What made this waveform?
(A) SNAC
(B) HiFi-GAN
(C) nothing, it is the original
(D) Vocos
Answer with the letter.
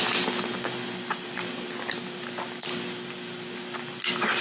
C